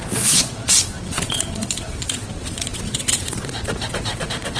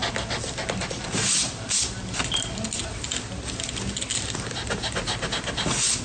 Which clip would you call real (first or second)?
second